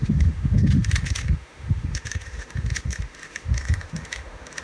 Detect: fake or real fake